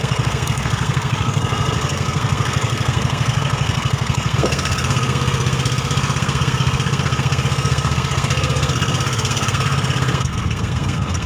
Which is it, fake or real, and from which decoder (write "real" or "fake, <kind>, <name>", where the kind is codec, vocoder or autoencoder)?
fake, codec, SNAC